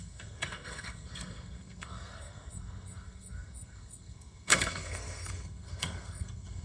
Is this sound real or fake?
fake